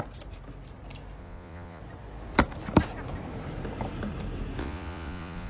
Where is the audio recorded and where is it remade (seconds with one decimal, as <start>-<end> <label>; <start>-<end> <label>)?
0.0-1.2 recorded; 1.2-1.8 remade; 1.8-4.6 recorded; 4.6-5.5 remade